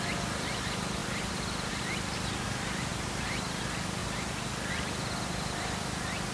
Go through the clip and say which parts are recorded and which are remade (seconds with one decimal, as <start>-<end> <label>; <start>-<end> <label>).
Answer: 0.0-2.9 recorded; 2.9-3.6 remade; 3.6-4.0 recorded; 4.0-4.7 remade; 4.7-6.3 recorded